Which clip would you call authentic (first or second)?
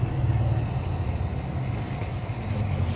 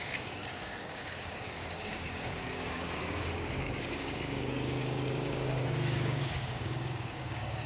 first